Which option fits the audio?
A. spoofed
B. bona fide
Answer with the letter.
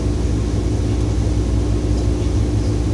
B